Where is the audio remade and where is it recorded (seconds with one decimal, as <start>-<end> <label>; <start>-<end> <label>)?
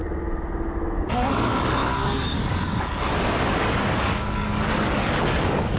0.0-1.1 recorded; 1.1-5.8 remade